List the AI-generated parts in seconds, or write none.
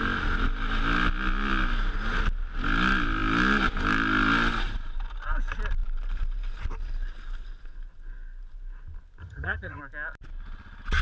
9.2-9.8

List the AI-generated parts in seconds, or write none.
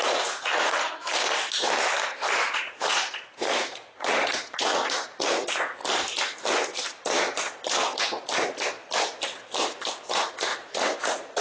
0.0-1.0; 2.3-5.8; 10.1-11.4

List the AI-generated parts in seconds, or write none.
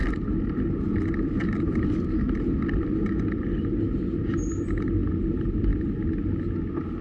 none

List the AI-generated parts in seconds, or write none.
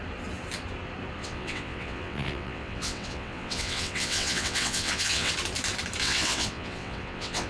1.2-5.3; 6.0-7.5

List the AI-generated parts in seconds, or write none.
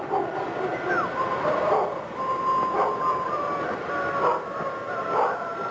none